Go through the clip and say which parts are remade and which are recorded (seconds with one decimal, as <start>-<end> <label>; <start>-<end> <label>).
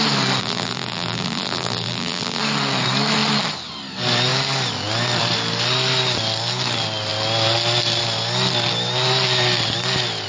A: 0.0-0.4 recorded; 0.4-2.4 remade; 2.4-10.3 recorded